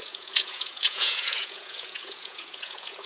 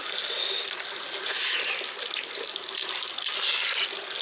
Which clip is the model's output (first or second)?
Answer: first